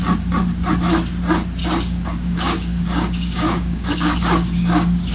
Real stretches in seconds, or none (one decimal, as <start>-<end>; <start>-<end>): 0.0-1.6